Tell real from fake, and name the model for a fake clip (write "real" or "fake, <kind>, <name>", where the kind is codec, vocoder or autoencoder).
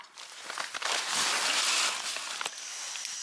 real